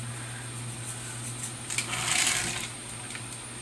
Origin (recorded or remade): recorded